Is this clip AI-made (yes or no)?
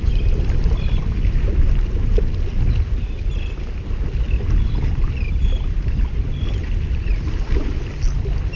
no